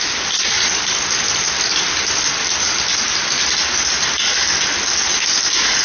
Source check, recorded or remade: recorded